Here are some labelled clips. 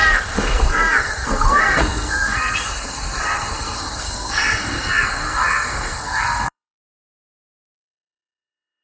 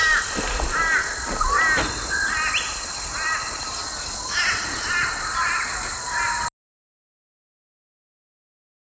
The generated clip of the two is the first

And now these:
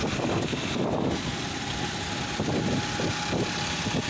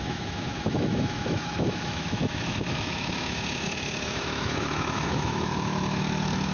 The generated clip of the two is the second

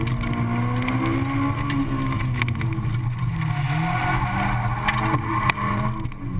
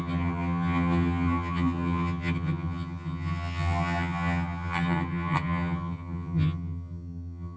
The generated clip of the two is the second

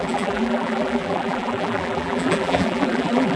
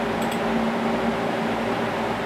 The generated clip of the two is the first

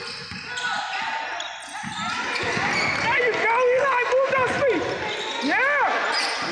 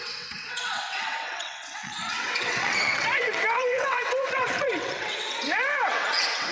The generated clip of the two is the second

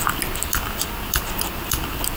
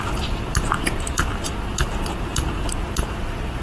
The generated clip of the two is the second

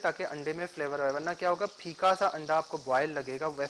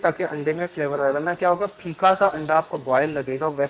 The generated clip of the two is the second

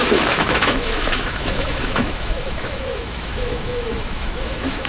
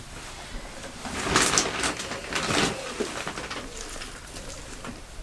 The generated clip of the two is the first